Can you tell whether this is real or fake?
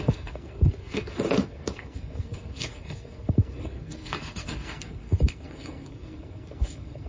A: fake